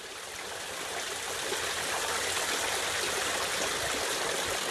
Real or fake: real